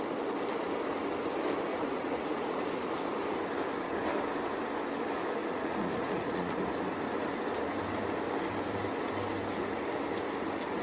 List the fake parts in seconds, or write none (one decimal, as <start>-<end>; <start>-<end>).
1.7-3.0; 5.4-6.6